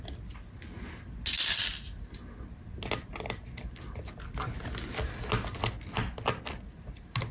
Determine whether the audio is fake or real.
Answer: real